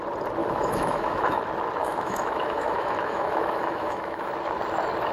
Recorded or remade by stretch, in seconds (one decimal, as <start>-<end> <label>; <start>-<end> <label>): 0.0-0.4 recorded; 0.4-1.4 remade; 1.4-1.8 recorded; 1.8-4.3 remade; 4.3-5.1 recorded